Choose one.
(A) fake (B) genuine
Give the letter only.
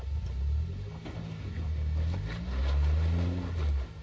B